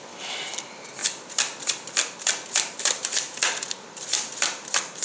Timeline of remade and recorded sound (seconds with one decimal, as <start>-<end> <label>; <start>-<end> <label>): 0.0-1.0 remade; 1.0-3.7 recorded; 3.7-5.0 remade